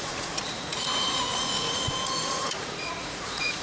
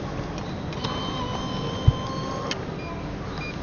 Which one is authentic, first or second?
second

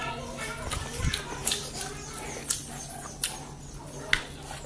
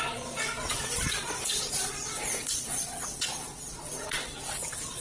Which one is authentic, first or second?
first